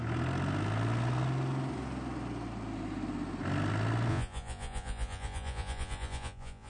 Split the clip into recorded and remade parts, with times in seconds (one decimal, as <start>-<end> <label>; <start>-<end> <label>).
0.0-4.1 recorded; 4.1-6.7 remade